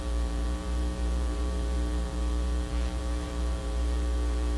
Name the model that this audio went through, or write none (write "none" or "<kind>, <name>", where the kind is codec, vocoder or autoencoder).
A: vocoder, BigVGAN v2